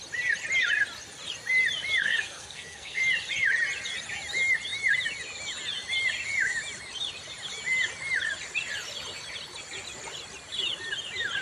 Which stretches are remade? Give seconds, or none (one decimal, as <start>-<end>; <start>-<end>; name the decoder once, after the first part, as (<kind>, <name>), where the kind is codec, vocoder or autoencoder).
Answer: 2.0-3.0 (codec, SNAC)